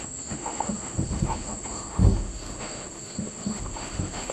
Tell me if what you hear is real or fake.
fake